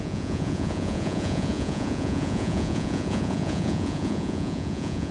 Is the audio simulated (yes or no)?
yes